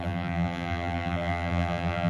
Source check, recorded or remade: remade